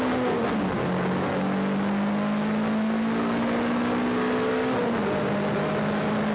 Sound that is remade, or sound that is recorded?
recorded